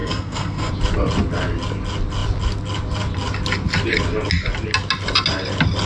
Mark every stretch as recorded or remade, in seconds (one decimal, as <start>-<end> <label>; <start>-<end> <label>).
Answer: 0.0-0.7 remade; 0.7-5.9 recorded